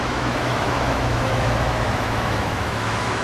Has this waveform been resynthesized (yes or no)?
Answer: yes